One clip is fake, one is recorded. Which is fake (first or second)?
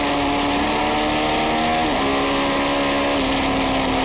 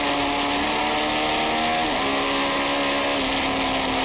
first